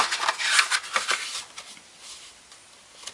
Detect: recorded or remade recorded